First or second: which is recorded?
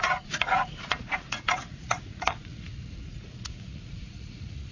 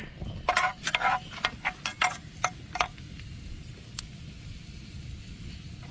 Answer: second